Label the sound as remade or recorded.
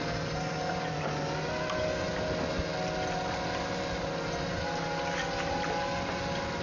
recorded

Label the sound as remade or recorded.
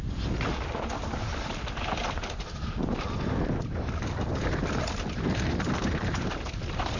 recorded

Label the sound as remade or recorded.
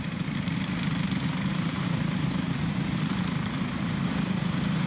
remade